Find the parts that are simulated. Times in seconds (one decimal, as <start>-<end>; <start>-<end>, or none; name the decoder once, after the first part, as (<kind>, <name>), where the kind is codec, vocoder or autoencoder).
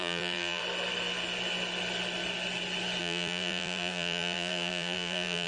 0.0-0.6 (vocoder, BigVGAN v2); 3.0-5.5